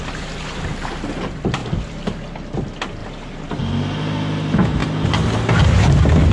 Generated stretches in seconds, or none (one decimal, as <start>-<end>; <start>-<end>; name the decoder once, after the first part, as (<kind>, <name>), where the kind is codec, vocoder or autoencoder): none